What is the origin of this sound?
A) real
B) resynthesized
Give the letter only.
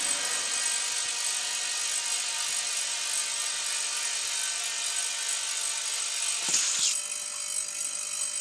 A